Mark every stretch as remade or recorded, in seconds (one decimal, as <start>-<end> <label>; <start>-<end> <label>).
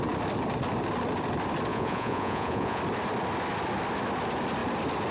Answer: 0.0-1.7 recorded; 1.7-2.8 remade; 2.8-5.1 recorded